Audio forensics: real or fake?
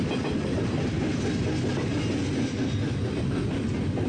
real